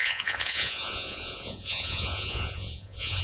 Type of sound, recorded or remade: remade